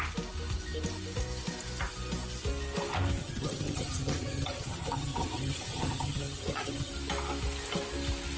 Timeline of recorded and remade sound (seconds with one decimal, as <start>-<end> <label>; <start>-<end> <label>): 0.0-3.2 recorded; 3.2-6.9 remade; 6.9-8.4 recorded